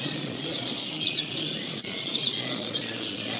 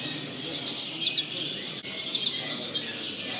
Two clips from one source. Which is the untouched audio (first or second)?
second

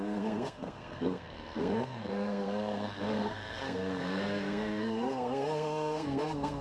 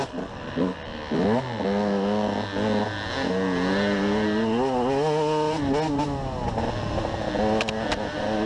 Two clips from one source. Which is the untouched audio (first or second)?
second